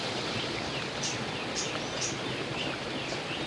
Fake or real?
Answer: real